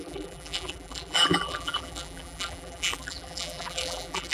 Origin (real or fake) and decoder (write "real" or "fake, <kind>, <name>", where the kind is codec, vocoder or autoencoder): fake, vocoder, BigVGAN v2